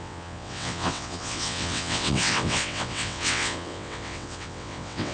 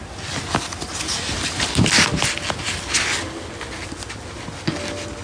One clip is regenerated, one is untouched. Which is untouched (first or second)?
second